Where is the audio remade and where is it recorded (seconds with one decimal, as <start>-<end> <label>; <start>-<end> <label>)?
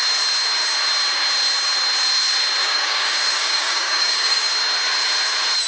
0.0-2.6 recorded; 2.6-4.5 remade; 4.5-5.7 recorded